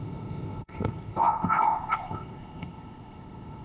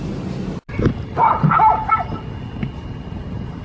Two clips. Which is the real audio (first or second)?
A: second